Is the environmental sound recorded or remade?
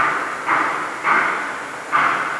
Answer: recorded